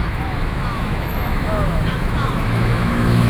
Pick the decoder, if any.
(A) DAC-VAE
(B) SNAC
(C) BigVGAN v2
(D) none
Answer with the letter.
A